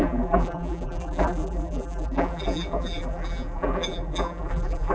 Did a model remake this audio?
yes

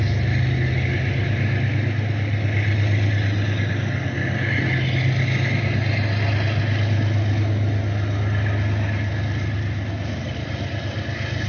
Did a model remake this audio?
no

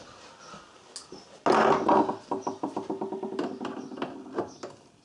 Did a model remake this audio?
no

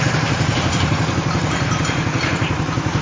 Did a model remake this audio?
yes